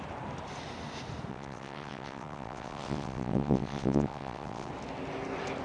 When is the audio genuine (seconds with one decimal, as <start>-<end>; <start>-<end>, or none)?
0.0-1.3; 4.7-5.6